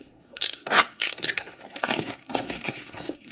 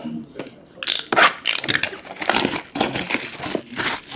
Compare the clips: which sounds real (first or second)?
second